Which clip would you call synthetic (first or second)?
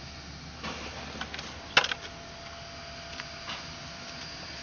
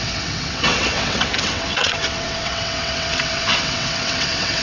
second